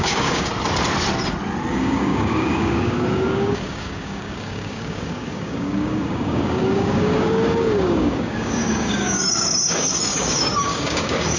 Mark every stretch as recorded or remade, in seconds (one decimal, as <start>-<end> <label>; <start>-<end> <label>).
0.0-0.5 remade; 0.5-1.7 recorded; 1.7-11.4 remade